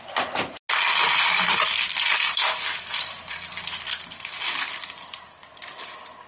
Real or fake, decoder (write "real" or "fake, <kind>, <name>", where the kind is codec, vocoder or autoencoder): real